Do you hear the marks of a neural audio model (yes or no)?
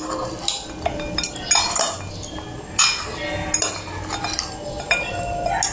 no